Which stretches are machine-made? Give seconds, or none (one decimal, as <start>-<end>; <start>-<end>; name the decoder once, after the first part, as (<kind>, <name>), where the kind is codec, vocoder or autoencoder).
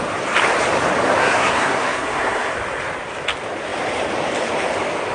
1.2-2.5 (codec, SNAC)